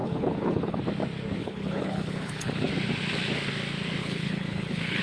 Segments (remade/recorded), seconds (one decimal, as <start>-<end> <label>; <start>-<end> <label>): 0.0-0.8 remade; 0.8-1.4 recorded; 1.4-2.7 remade; 2.7-4.0 recorded; 4.0-5.0 remade